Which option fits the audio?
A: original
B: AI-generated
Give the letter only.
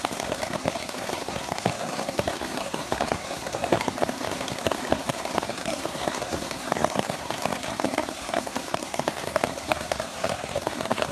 B